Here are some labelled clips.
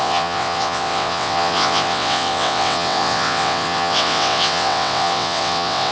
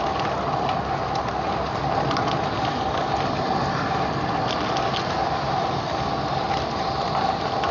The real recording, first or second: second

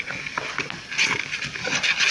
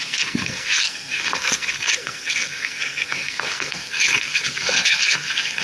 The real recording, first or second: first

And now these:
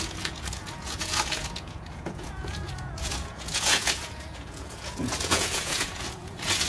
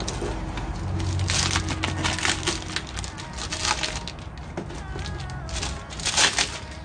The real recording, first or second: second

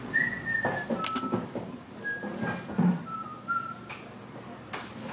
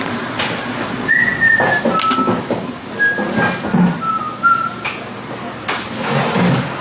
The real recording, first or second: second